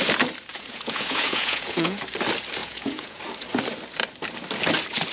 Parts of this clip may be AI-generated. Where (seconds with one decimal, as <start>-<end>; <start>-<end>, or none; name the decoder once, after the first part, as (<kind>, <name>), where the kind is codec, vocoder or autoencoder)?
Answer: 0.5-2.0 (vocoder, Vocos); 2.6-3.2

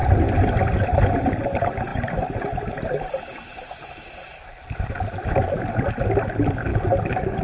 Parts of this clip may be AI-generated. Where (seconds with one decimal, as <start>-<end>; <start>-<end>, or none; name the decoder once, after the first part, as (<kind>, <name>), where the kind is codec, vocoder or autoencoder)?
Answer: none

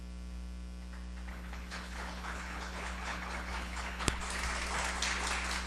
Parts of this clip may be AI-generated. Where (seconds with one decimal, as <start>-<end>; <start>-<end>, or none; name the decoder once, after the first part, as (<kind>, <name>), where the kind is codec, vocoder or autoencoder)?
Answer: 1.3-4.2 (codec, HILCodec)

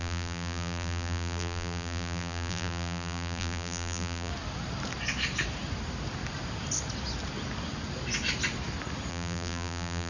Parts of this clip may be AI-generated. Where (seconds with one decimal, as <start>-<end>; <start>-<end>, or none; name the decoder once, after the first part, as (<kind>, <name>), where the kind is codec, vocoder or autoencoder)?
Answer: 0.0-4.3 (vocoder, BigVGAN v2); 9.1-10.1

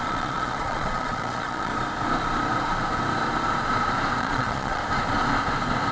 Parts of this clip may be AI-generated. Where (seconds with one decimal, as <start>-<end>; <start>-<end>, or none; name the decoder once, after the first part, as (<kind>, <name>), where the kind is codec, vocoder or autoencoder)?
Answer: 0.0-1.7 (vocoder, Vocos); 4.2-4.8

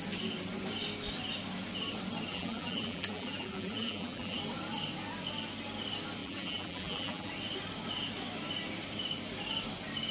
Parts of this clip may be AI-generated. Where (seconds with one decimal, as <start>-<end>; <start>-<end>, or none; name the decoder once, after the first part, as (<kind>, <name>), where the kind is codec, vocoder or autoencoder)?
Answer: 2.3-4.4 (vocoder, BigVGAN v2); 6.2-7.3

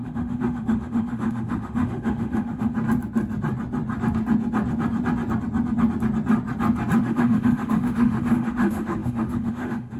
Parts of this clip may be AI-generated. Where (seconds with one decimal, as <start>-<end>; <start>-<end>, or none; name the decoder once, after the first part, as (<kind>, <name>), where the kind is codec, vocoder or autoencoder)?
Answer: 0.0-2.7 (autoencoder, DAC-VAE); 7.0-10.0